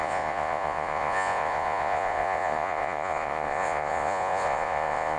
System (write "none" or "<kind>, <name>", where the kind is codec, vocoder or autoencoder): vocoder, Vocos